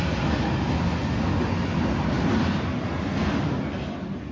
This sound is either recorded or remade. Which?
recorded